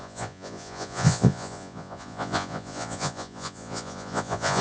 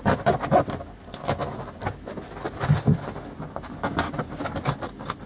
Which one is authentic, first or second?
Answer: second